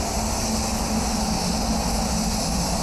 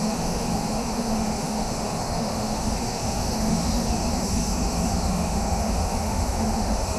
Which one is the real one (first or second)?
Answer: first